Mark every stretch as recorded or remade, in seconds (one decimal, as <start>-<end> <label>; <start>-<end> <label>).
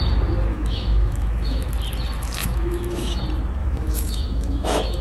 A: 0.0-0.5 recorded; 0.5-1.7 remade; 1.7-2.4 recorded; 2.4-3.2 remade; 3.2-3.6 recorded; 3.6-5.0 remade